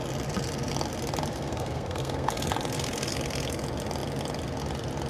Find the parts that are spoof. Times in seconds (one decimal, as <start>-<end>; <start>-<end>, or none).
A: 1.3-2.3